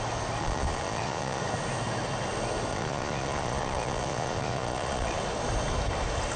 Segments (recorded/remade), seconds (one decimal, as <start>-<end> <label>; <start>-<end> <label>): 0.0-0.4 recorded; 0.4-1.4 remade; 1.4-2.7 recorded; 2.7-5.2 remade; 5.2-6.4 recorded